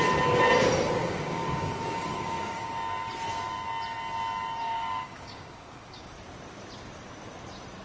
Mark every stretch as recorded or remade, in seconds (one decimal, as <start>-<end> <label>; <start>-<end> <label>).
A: 0.0-1.0 recorded; 1.0-2.7 remade; 2.7-4.6 recorded; 4.6-6.1 remade; 6.1-7.8 recorded